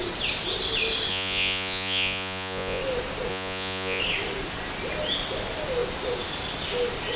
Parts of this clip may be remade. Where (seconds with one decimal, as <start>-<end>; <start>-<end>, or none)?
1.1-2.8; 3.3-4.0